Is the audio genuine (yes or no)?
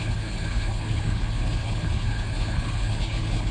no